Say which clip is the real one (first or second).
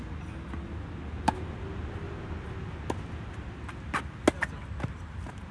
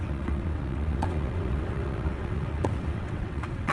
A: first